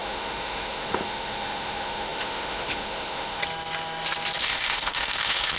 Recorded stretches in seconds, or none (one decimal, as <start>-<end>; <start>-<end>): 3.4-4.4